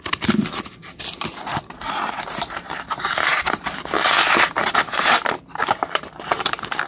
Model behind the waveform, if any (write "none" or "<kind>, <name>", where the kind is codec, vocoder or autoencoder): vocoder, BigVGAN v2